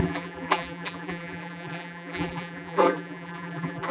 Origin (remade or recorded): remade